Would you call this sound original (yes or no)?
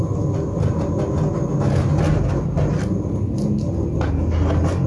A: yes